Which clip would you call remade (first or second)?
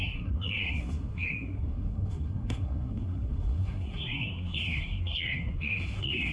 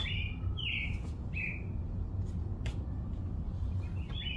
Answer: first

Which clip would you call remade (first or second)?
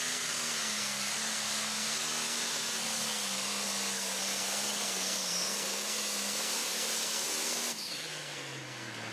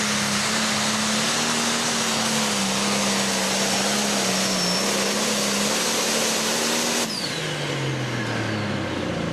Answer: first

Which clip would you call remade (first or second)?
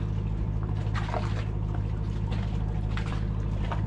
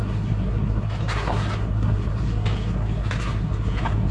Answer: second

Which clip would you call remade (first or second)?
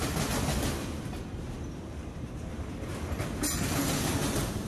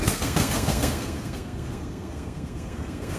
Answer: second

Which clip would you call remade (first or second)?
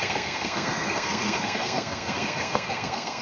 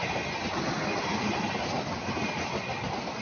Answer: first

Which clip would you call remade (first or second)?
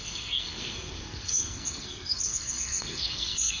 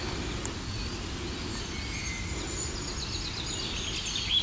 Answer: first